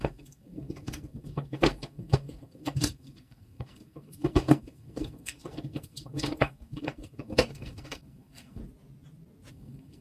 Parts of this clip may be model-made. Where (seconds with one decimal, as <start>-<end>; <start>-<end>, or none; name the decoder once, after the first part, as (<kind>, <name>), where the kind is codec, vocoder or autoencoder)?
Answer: 0.0-8.6 (codec, SNAC); 9.5-10.0